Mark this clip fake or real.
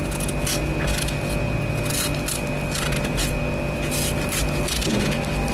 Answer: real